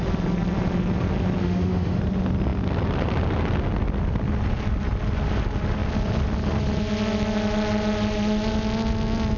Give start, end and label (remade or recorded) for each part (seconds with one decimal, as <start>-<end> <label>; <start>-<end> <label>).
0.0-1.4 recorded; 1.4-2.0 remade; 2.0-9.4 recorded